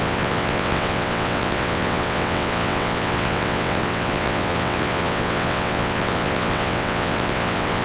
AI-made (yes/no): yes